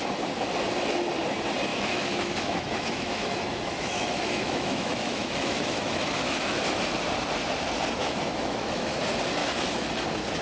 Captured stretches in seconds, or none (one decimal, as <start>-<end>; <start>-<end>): 0.0-1.7; 6.6-8.0; 9.0-9.4; 9.9-10.4